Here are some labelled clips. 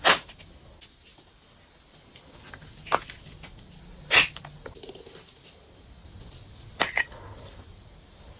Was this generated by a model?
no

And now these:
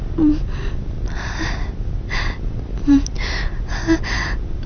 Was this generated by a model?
no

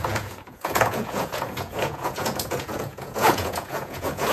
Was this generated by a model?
yes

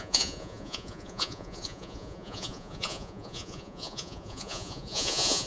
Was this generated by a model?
yes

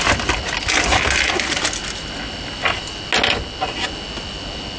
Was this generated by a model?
no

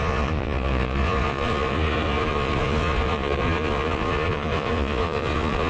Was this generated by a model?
yes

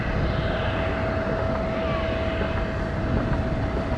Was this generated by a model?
no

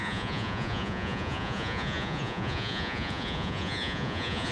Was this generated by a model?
yes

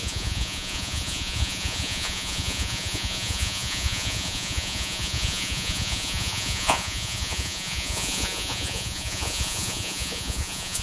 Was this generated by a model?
yes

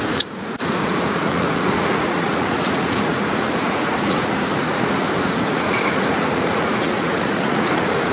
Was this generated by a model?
yes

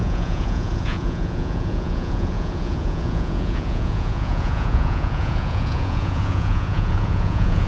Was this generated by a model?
yes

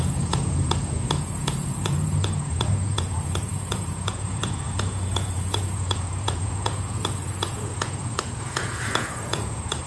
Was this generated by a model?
yes